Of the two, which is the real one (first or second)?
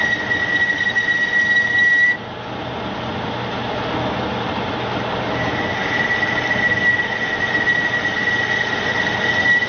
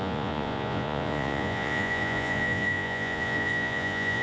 first